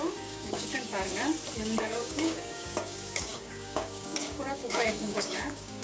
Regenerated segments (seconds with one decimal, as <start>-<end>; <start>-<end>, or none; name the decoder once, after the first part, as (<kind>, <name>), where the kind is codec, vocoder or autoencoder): 0.0-1.1 (codec, DAC); 1.8-5.8